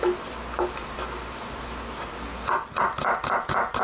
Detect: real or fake real